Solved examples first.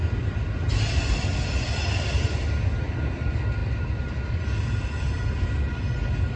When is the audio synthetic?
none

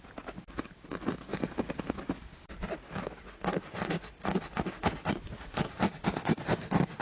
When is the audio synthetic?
none

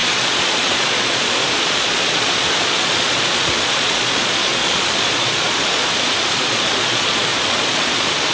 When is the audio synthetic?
0.0-8.3 (vocoder, Vocos)

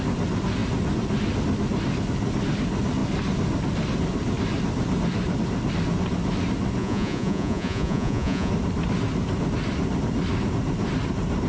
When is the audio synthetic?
6.8-8.5 (vocoder, Vocos)

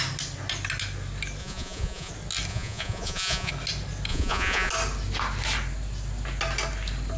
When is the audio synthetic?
1.4-2.1 (vocoder, Vocos); 2.5-3.5; 4.1-4.7